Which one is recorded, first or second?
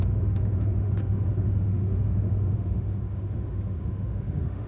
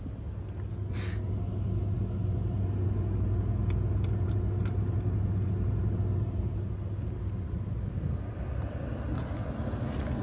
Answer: second